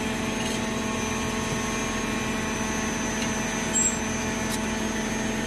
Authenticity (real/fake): real